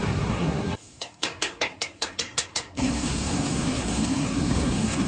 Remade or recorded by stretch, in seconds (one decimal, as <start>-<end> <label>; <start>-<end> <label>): 0.0-5.1 remade